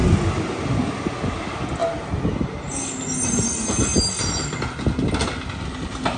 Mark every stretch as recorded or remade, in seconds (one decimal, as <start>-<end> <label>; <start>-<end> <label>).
0.0-6.2 recorded